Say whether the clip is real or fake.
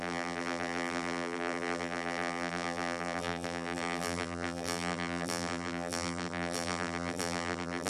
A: fake